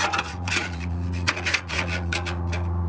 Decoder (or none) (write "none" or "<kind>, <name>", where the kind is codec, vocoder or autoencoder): vocoder, Vocos